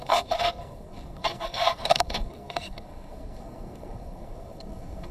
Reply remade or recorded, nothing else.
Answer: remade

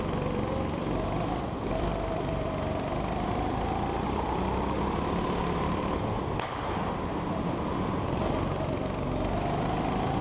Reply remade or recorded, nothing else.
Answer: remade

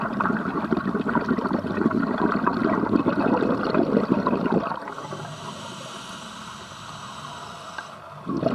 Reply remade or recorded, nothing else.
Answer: recorded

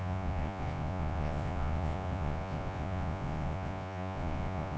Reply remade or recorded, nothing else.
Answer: remade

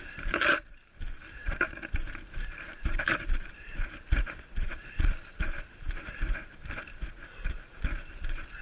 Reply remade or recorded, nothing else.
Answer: remade